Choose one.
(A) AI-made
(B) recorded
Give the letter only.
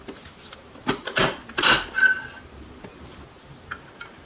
B